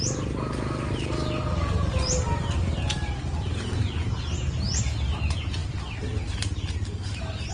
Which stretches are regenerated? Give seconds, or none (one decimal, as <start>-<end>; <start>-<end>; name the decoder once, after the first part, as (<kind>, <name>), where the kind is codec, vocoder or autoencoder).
4.0-4.8 (vocoder, BigVGAN v2)